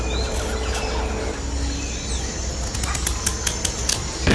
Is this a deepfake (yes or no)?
no